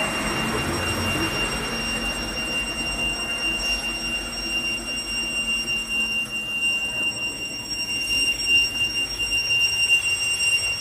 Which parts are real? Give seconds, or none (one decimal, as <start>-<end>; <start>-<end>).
0.0-3.0; 3.6-5.8; 10.0-10.8